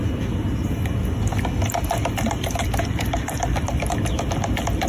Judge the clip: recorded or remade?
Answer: recorded